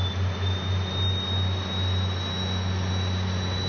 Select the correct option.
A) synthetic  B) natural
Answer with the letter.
B